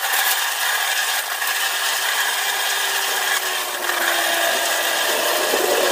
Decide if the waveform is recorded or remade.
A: recorded